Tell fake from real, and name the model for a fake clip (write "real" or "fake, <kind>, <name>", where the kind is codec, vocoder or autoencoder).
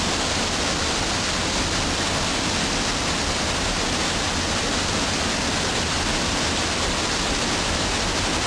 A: real